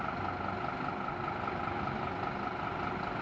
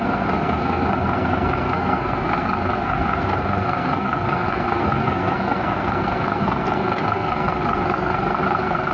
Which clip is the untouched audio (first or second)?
first